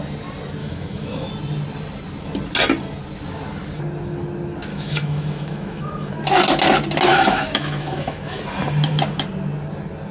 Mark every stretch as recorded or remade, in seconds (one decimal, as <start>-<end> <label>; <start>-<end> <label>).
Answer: 0.0-0.6 recorded; 0.6-1.3 remade; 1.3-4.7 recorded; 4.7-6.1 remade; 6.1-7.1 recorded; 7.1-8.4 remade; 8.4-10.1 recorded